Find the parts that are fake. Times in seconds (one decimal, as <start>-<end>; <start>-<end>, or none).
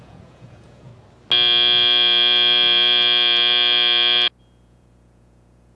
0.0-0.9; 4.4-5.8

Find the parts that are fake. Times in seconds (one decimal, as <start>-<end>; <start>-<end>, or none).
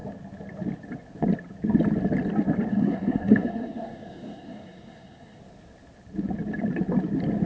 2.7-5.4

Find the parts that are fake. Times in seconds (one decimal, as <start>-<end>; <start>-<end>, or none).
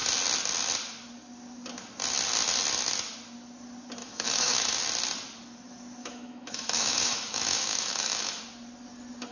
4.0-4.8; 6.0-8.4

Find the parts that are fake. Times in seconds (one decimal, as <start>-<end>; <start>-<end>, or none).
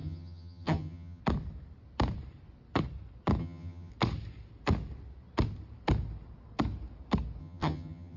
0.0-1.2; 3.4-3.9; 7.4-8.2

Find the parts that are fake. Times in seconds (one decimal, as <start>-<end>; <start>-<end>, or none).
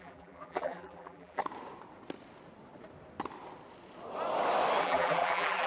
0.0-1.4; 4.8-5.7